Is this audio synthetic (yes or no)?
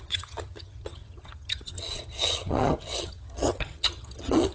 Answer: yes